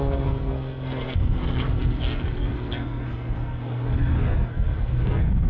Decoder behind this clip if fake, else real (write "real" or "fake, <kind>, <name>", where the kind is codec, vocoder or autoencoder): fake, codec, SNAC